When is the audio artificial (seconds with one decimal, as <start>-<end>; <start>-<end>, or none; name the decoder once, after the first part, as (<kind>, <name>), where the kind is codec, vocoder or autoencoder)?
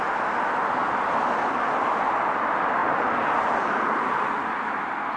2.8-4.4 (vocoder, BigVGAN v2)